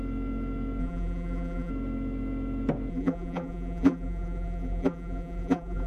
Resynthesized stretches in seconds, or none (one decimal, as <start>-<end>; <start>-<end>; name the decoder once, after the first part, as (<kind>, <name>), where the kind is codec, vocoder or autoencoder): 0.8-1.7 (vocoder, BigVGAN v2); 2.9-5.9